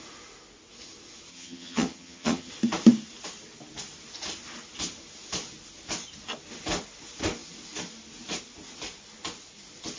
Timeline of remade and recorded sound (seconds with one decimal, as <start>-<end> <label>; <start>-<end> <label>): 0.0-1.3 recorded; 1.3-2.5 remade; 2.5-10.0 recorded

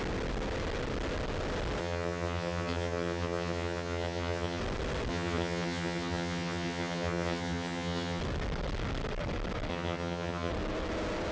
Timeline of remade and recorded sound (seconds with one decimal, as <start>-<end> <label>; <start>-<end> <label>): 0.0-1.8 recorded; 1.8-4.6 remade; 4.6-5.1 recorded; 5.1-8.2 remade; 8.2-9.7 recorded; 9.7-10.5 remade; 10.5-11.3 recorded